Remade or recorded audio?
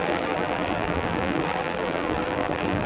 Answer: remade